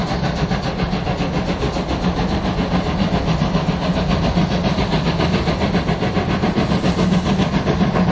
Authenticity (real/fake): real